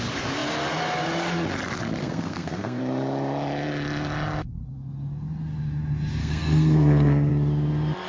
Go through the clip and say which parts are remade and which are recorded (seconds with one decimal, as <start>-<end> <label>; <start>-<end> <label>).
0.0-2.0 recorded; 2.0-2.8 remade; 2.8-6.2 recorded; 6.2-7.3 remade; 7.3-8.1 recorded